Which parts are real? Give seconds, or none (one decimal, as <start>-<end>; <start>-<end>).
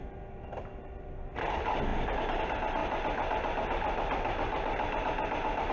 0.0-5.7